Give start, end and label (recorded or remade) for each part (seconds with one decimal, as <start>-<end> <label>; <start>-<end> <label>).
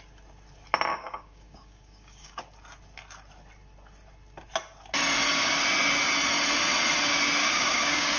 0.0-0.9 recorded; 0.9-2.4 remade; 2.4-7.4 recorded; 7.4-8.2 remade